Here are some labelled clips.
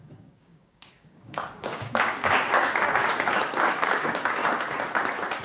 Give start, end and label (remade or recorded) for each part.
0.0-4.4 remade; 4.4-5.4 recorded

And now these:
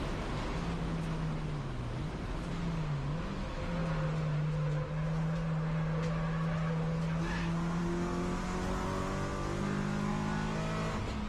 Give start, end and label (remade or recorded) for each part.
0.0-11.3 recorded

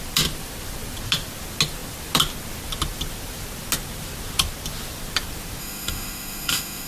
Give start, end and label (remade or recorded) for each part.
0.0-5.6 recorded; 5.6-6.9 remade

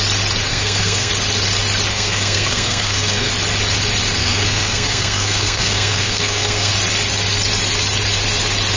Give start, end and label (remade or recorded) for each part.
0.0-0.5 recorded; 0.5-1.1 remade; 1.1-1.9 recorded; 1.9-3.3 remade; 3.3-4.2 recorded; 4.2-6.7 remade; 6.7-8.8 recorded

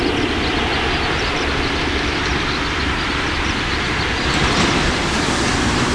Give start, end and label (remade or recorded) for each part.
0.0-0.6 recorded; 0.6-1.3 remade; 1.3-2.3 recorded; 2.3-5.9 remade

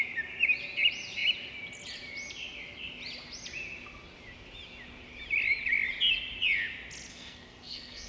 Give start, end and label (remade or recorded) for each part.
0.0-7.1 recorded; 7.1-8.1 remade